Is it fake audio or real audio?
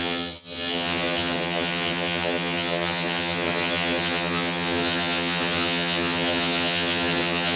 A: fake